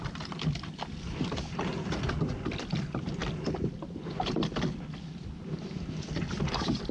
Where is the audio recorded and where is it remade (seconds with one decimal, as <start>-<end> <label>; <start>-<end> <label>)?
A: 0.0-6.9 recorded